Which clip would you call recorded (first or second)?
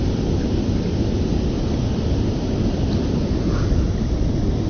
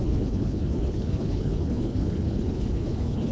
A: first